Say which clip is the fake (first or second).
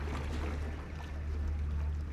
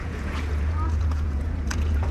second